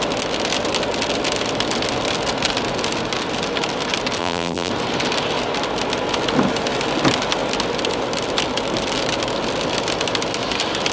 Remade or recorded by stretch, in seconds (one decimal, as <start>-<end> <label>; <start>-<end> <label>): 0.0-4.2 recorded; 4.2-4.7 remade; 4.7-10.9 recorded